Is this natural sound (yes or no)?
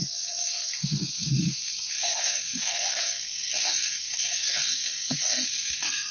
no